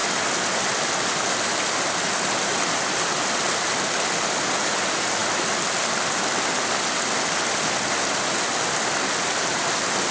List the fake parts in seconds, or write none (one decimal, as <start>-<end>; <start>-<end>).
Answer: none